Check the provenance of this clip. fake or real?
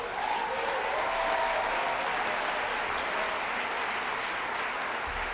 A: real